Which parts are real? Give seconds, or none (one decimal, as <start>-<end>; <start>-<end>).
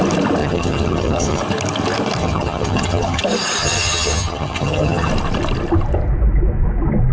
0.0-0.4; 1.4-2.2; 3.2-3.6; 5.1-7.1